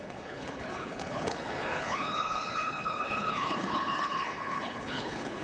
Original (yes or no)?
no